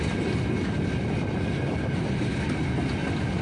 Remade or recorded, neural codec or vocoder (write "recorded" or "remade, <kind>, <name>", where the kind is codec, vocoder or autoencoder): recorded